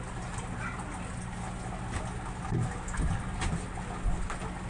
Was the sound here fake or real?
real